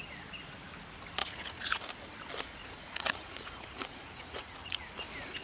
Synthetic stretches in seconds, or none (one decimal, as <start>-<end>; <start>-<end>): 1.2-1.9; 2.6-4.8